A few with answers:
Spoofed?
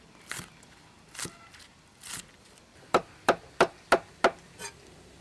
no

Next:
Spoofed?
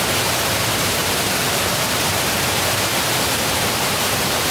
yes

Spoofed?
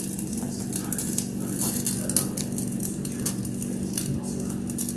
no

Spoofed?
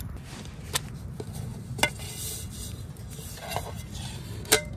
no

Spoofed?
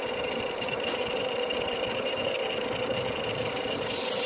yes